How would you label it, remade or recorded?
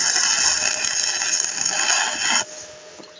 recorded